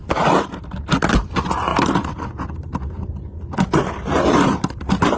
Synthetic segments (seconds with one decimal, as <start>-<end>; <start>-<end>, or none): 0.0-0.9; 1.7-4.8